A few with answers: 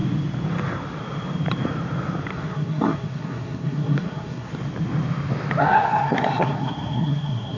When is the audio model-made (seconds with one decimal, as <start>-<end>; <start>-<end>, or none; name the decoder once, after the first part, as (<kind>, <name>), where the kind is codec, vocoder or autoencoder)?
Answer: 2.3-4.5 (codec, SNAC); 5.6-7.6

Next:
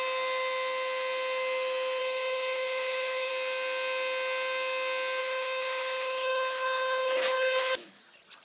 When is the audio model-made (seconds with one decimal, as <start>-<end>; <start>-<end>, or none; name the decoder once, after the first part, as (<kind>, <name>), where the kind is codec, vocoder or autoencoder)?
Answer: 2.0-3.3 (codec, HILCodec); 5.2-8.0

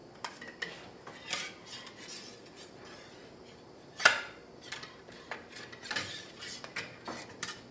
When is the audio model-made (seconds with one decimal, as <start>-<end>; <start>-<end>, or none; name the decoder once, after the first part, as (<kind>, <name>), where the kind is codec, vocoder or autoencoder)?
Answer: none